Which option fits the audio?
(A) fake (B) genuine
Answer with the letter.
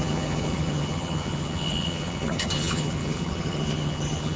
A